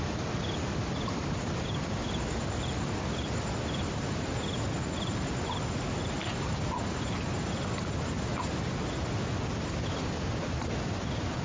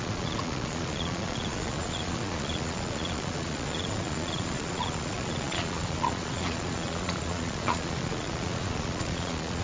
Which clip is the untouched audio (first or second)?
first